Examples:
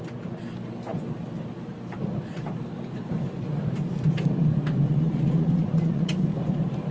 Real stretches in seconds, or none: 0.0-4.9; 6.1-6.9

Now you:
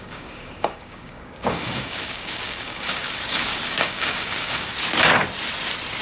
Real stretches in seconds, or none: 4.7-6.0

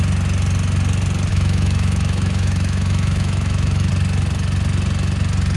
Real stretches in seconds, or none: 0.0-1.3; 3.9-5.6

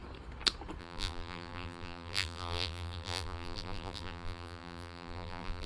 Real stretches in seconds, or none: 0.0-0.8

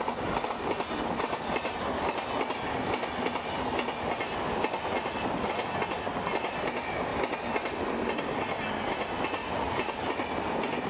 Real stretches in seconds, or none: 0.0-9.4; 10.0-10.9

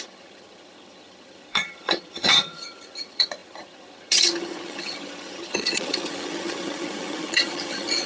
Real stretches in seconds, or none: none